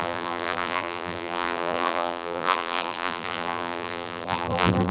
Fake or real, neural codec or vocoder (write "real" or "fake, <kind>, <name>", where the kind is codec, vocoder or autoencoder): fake, vocoder, BigVGAN v2